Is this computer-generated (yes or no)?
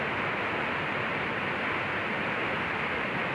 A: no